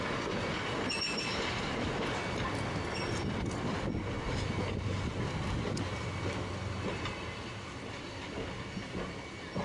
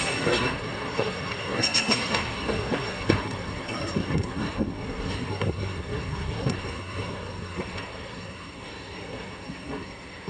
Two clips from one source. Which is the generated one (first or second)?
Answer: second